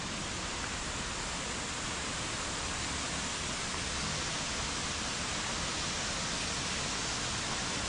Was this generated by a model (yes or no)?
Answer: no